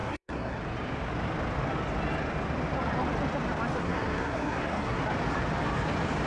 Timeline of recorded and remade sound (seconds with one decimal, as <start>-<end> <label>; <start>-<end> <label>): 0.0-0.6 remade; 0.6-3.8 recorded; 3.8-5.0 remade; 5.0-6.3 recorded